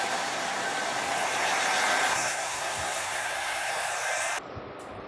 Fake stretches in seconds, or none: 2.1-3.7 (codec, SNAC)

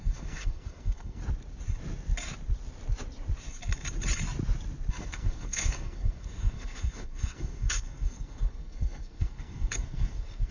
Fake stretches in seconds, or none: 0.0-1.2 (codec, SNAC); 4.9-10.5